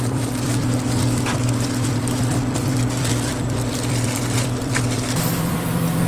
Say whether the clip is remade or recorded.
remade